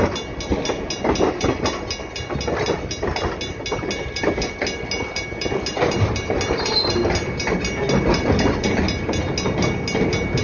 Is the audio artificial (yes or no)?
no